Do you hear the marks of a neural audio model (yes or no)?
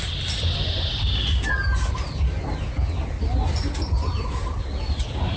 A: no